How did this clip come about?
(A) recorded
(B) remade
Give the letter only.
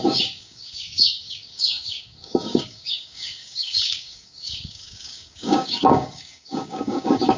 B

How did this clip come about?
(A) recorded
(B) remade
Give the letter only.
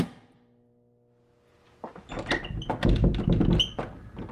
A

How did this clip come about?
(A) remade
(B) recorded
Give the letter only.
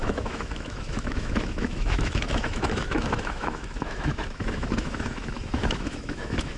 A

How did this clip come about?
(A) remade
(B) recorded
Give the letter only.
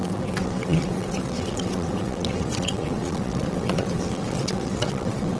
A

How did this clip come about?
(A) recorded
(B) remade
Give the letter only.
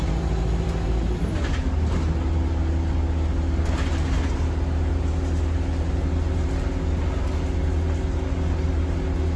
A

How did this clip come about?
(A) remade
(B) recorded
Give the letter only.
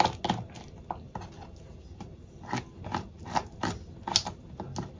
B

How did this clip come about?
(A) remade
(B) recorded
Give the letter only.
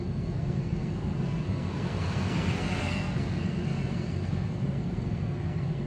A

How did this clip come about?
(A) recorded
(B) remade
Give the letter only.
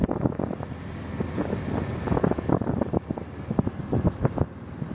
A